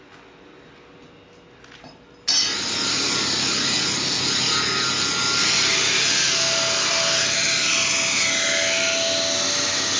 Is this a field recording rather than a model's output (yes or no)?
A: yes